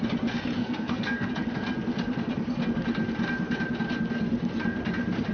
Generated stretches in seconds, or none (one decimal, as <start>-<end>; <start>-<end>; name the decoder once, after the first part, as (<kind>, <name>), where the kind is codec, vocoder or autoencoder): 0.6-1.3 (codec, SNAC)